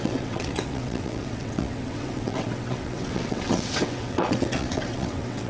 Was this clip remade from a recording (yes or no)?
yes